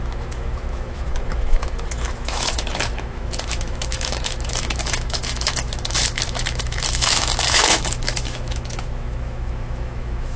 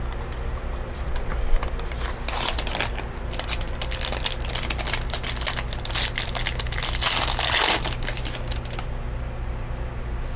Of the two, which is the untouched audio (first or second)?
second